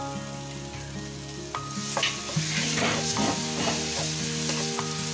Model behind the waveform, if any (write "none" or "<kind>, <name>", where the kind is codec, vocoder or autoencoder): none